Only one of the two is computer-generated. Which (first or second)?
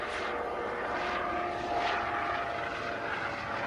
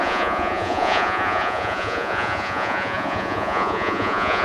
second